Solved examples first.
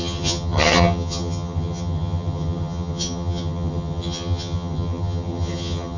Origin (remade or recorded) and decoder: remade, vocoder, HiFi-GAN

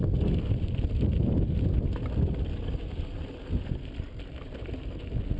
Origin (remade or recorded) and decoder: recorded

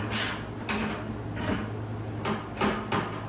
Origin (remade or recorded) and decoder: recorded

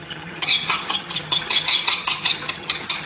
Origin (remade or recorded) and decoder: remade, vocoder, HiFi-GAN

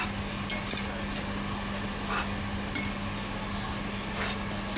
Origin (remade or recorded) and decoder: recorded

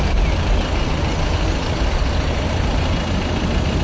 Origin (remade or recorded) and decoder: recorded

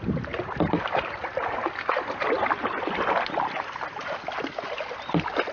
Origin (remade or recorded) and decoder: recorded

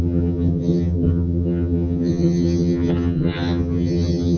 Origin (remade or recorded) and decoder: remade, vocoder, HiFi-GAN